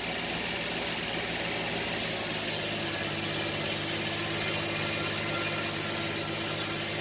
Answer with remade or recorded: recorded